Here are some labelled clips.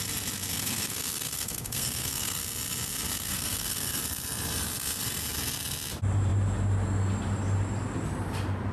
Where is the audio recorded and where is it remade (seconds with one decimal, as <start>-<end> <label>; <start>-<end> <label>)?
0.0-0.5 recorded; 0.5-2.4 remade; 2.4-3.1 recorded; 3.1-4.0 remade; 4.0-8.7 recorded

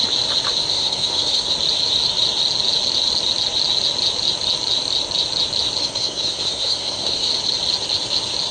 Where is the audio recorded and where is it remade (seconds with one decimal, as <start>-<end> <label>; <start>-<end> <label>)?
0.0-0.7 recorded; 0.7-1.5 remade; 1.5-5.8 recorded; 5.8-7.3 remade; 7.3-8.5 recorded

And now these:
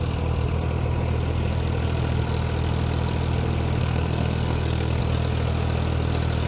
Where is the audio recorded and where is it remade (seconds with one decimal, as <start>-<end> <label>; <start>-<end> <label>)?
0.0-3.8 recorded; 3.8-5.0 remade; 5.0-6.5 recorded

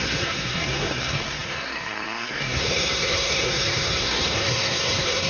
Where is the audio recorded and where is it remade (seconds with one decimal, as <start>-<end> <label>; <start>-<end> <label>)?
0.0-5.3 remade

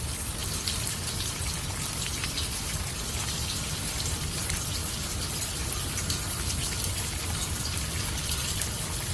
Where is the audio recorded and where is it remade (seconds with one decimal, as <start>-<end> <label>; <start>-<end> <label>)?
0.0-9.1 recorded

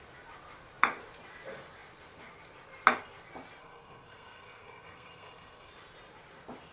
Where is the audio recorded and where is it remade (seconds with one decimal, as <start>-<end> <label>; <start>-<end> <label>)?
0.0-3.6 recorded; 3.6-5.7 remade; 5.7-6.7 recorded

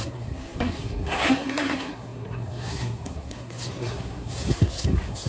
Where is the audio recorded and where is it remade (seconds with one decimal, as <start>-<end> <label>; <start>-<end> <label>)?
0.0-5.3 remade

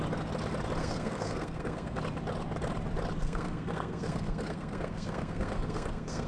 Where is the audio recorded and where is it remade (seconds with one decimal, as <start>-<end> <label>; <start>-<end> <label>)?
0.0-0.8 recorded; 0.8-2.0 remade; 2.0-3.2 recorded; 3.2-6.3 remade